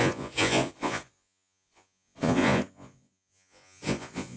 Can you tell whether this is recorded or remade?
remade